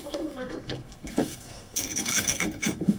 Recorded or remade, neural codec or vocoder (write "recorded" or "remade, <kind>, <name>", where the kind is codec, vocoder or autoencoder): remade, codec, SNAC